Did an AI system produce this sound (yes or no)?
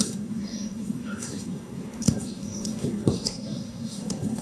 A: yes